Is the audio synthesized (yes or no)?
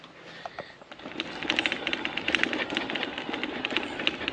no